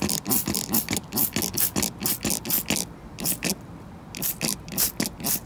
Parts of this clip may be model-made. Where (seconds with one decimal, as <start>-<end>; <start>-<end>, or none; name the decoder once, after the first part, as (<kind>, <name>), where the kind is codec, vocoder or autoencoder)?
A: none